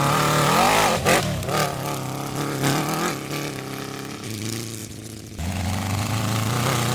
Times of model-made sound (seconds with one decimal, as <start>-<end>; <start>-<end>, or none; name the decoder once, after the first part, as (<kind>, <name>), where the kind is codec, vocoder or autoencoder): 4.8-5.5 (vocoder, Vocos)